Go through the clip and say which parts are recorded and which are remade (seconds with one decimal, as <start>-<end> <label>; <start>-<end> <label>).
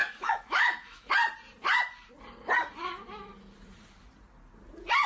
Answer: 0.0-1.1 remade; 1.1-5.1 recorded